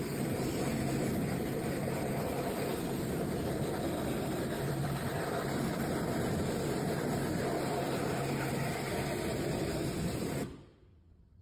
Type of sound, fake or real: fake